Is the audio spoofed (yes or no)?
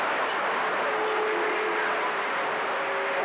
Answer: no